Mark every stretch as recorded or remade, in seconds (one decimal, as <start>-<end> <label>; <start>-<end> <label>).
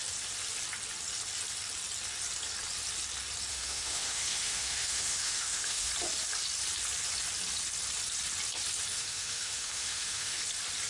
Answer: 0.0-3.5 recorded; 3.5-5.9 remade; 5.9-8.9 recorded; 8.9-10.4 remade; 10.4-10.9 recorded